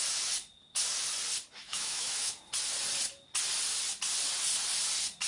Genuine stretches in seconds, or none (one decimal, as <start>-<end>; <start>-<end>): 0.0-1.6; 2.4-5.3